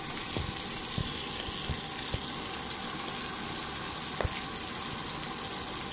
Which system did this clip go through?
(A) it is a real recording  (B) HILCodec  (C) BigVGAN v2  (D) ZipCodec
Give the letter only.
A